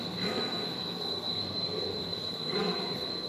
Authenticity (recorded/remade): remade